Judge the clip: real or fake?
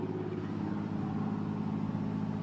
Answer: real